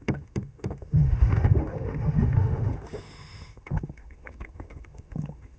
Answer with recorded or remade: remade